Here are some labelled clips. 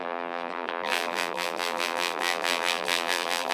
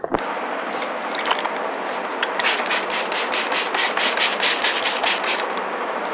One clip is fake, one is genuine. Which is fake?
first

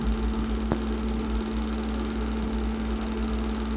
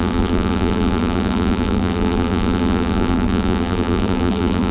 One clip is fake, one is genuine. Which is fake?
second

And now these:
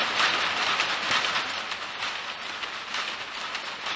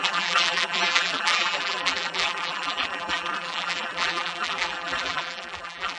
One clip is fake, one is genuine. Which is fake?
second